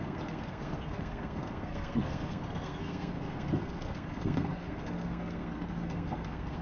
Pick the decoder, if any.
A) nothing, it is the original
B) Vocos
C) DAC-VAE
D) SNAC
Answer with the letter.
D